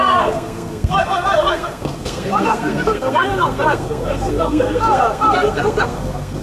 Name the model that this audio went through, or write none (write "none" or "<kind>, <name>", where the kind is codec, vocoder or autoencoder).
codec, SNAC